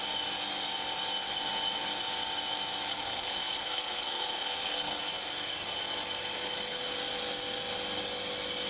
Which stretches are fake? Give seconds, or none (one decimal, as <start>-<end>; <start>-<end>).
2.9-5.0